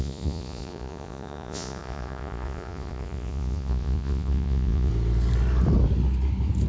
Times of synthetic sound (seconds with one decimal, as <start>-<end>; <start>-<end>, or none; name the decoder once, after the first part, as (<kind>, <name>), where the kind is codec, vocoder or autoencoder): 0.0-4.9 (vocoder, Vocos)